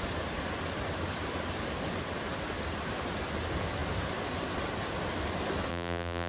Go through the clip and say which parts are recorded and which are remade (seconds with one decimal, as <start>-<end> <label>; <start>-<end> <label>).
0.0-5.7 recorded; 5.7-6.3 remade